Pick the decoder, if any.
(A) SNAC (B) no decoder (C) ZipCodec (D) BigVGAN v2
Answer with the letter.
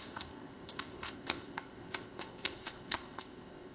C